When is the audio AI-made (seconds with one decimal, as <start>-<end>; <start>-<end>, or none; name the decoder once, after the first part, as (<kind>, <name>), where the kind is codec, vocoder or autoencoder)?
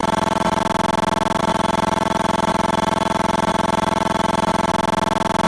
0.0-0.6 (autoencoder, DAC-VAE); 1.4-4.7